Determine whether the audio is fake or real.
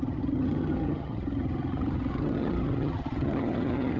fake